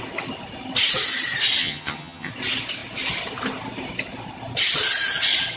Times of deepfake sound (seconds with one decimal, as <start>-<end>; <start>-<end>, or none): 1.6-2.3